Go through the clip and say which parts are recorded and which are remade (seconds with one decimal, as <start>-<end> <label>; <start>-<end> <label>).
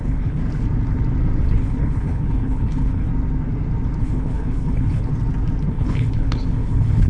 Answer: 0.0-0.4 remade; 0.4-1.4 recorded; 1.4-3.1 remade; 3.1-4.0 recorded; 4.0-5.1 remade; 5.1-5.7 recorded; 5.7-7.1 remade